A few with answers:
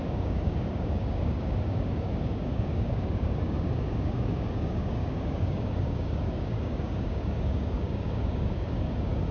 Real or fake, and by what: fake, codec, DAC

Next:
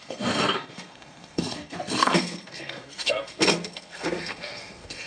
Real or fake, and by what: fake, codec, SNAC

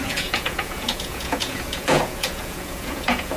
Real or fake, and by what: fake, vocoder, Vocos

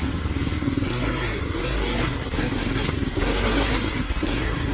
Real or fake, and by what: fake, codec, SNAC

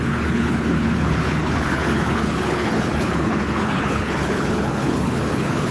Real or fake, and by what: fake, codec, HILCodec